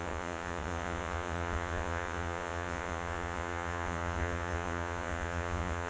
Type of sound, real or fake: fake